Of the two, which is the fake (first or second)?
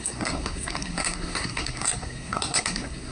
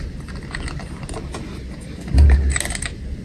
first